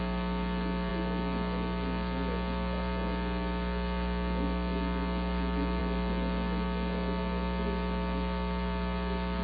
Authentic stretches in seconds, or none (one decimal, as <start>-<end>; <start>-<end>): 0.0-9.4